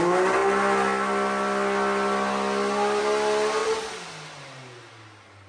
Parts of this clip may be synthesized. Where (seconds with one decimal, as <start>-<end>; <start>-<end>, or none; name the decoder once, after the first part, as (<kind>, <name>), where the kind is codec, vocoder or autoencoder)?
3.6-4.1 (vocoder, BigVGAN v2)

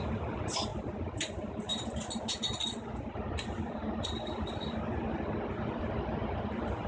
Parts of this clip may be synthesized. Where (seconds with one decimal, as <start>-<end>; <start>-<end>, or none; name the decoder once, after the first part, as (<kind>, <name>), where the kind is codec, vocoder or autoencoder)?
0.0-1.7 (vocoder, BigVGAN v2); 5.8-6.9

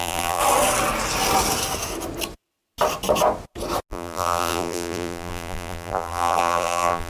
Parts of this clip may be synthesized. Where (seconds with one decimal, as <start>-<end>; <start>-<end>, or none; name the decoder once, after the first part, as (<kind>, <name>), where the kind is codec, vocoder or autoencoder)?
0.0-0.4 (vocoder, BigVGAN v2); 3.9-7.1

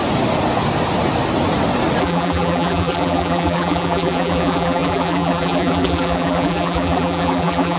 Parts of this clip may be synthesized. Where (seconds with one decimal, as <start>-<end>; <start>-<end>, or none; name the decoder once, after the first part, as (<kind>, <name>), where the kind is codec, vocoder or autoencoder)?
2.0-7.8 (vocoder, BigVGAN v2)

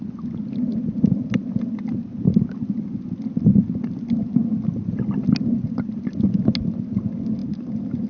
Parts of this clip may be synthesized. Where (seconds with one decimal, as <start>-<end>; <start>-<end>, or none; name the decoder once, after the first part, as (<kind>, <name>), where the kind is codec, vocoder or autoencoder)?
7.4-8.1 (vocoder, BigVGAN v2)

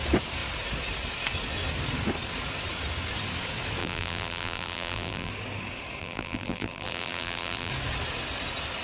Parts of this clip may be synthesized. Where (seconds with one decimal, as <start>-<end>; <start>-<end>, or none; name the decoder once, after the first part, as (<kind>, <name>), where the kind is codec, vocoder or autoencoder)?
3.8-5.3 (vocoder, BigVGAN v2); 6.0-7.7

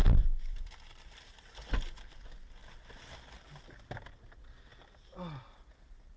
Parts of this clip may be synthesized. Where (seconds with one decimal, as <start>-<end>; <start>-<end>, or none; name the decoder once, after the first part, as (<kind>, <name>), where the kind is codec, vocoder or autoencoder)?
0.0-0.7 (vocoder, BigVGAN v2)